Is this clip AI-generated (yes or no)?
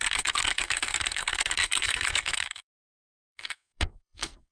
yes